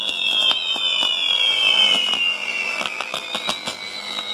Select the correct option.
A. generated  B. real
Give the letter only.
A